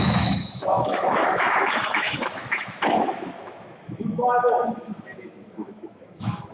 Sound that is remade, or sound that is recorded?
remade